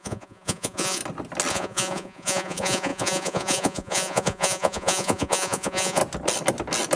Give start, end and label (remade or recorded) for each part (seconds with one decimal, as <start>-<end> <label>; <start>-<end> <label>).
0.0-1.0 remade; 1.0-1.5 recorded; 1.5-6.0 remade; 6.0-7.0 recorded